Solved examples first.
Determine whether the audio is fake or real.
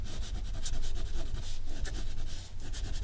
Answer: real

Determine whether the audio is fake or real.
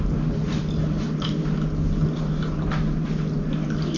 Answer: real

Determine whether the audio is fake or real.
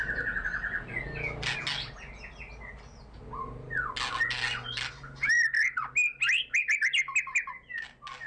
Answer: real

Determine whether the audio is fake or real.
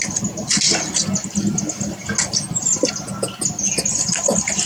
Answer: real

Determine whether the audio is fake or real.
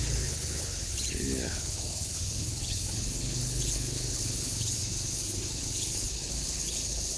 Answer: fake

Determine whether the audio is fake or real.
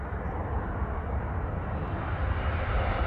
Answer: real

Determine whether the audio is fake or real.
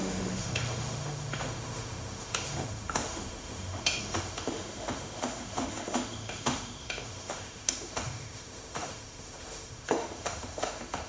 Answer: fake